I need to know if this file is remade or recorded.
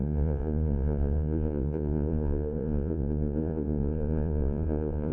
remade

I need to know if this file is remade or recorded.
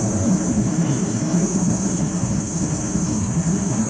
remade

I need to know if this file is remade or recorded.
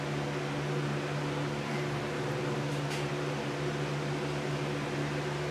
recorded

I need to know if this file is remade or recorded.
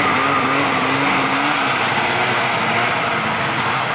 recorded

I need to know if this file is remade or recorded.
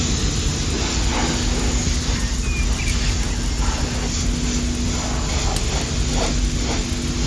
recorded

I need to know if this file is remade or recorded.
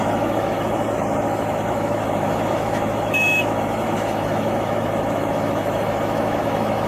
remade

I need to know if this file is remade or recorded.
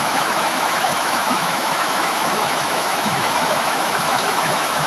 remade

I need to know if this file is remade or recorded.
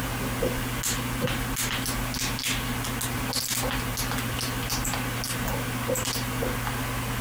recorded